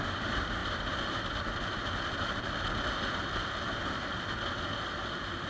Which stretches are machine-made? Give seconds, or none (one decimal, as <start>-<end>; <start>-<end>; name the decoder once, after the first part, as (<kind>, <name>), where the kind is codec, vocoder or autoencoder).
none